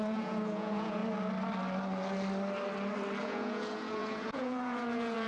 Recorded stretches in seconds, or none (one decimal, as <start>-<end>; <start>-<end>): 1.0-3.2